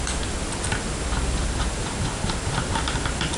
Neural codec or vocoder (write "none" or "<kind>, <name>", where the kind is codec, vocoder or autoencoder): none